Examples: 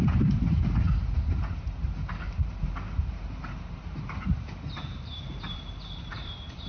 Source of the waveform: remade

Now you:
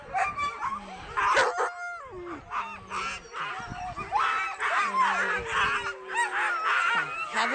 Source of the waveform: recorded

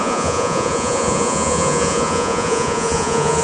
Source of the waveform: remade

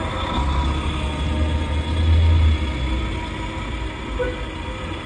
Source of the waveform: recorded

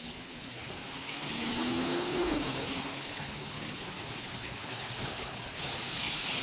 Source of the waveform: remade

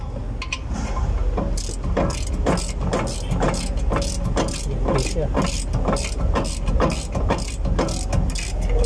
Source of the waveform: recorded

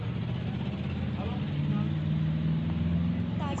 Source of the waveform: recorded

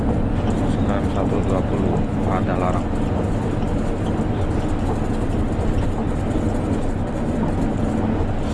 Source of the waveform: recorded